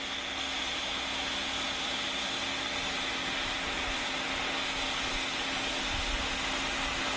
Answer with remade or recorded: recorded